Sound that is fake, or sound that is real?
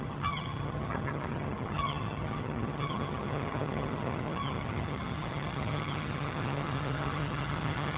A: fake